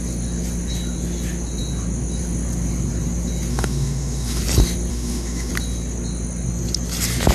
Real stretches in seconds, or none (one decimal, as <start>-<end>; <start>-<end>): 0.0-3.5; 4.4-4.9; 5.5-7.3